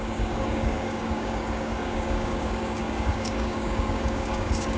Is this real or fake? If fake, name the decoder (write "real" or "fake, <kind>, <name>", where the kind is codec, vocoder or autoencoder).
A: fake, codec, DAC